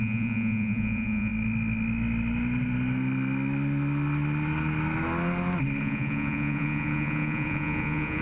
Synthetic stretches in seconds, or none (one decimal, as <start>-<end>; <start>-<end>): 0.0-1.3; 5.8-8.2